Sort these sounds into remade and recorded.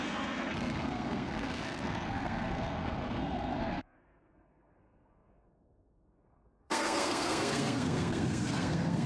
remade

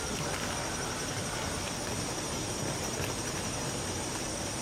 recorded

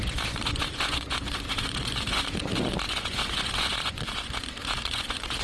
remade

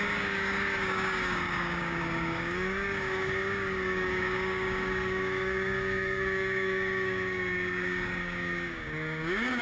remade